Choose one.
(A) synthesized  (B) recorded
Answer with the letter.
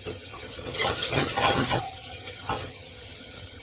A